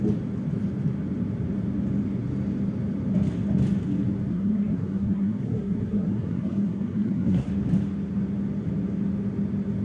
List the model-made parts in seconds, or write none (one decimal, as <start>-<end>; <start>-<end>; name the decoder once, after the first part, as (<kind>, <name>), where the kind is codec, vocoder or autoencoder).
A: 4.3-7.5 (codec, SNAC)